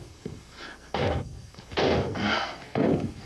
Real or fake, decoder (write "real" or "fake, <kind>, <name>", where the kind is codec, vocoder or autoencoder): fake, codec, SNAC